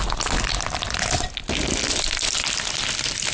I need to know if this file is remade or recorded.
recorded